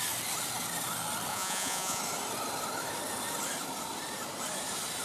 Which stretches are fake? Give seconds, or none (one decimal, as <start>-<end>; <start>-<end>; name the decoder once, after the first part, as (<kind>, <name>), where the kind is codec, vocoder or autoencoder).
1.3-2.0 (vocoder, Vocos)

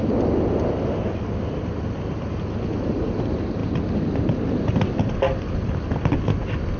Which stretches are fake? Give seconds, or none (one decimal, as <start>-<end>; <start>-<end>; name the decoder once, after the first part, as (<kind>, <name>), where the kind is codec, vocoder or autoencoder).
none